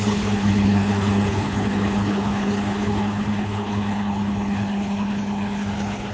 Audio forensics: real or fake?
fake